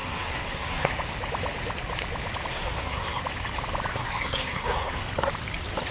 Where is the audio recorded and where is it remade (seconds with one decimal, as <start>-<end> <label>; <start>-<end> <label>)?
0.0-0.9 remade; 0.9-2.5 recorded; 2.5-3.2 remade; 3.2-3.9 recorded; 3.9-5.0 remade; 5.0-5.9 recorded